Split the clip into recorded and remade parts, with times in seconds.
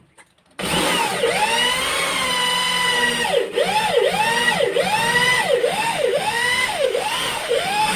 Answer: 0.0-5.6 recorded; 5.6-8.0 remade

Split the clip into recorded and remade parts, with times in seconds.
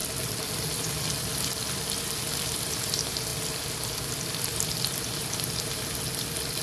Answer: 0.0-6.6 recorded